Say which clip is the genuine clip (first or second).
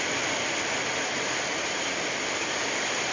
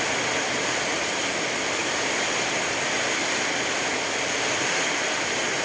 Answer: second